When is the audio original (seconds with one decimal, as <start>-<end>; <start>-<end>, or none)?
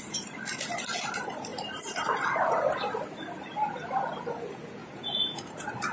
0.0-4.8; 5.4-5.9